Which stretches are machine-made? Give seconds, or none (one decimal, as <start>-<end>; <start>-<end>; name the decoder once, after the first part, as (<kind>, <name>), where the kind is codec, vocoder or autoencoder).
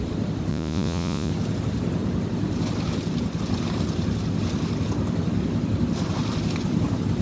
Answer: 0.5-1.3 (vocoder, Vocos)